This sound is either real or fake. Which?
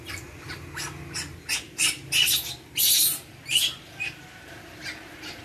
real